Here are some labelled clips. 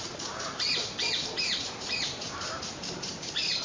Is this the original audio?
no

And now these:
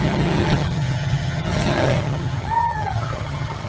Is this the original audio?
no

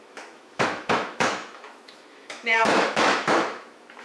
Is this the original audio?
no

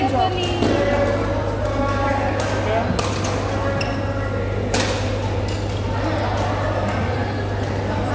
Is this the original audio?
yes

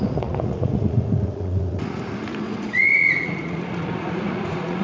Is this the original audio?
no